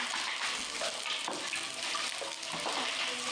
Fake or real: real